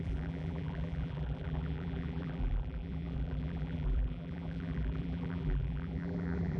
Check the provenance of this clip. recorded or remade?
remade